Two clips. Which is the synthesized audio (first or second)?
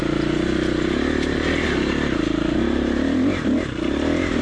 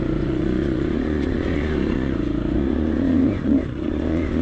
second